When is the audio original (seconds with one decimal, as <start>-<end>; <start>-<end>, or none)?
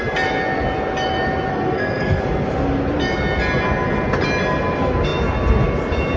0.0-1.5; 2.2-6.2